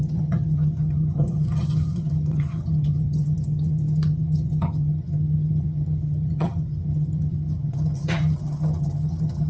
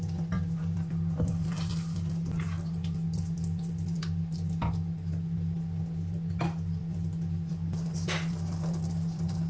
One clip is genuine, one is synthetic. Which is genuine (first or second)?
second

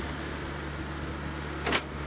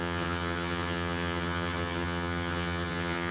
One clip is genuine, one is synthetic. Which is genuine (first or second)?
first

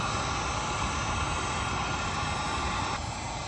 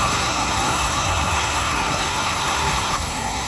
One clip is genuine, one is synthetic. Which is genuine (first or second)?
first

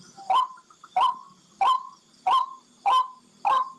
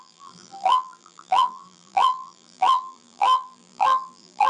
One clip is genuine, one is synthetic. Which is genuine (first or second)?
first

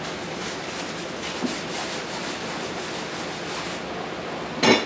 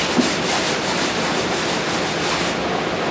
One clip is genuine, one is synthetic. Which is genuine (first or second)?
first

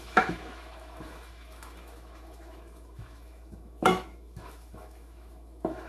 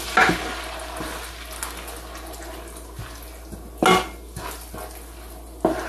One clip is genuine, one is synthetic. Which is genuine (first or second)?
second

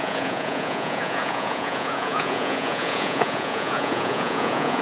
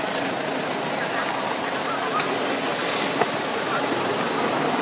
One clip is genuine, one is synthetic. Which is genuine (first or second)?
second